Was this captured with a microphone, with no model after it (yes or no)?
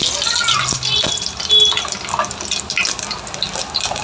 yes